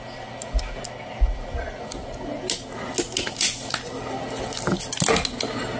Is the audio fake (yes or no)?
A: no